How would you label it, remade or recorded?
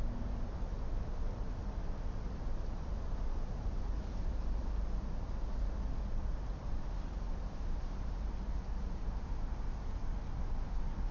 recorded